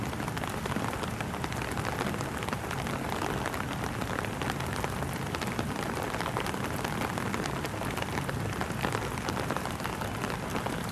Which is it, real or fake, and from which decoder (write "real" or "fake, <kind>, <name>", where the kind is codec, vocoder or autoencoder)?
real